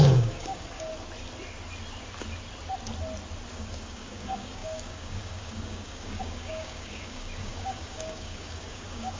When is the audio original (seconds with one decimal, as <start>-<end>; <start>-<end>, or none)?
0.9-3.5